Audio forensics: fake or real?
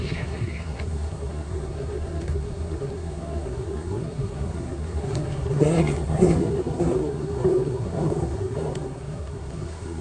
fake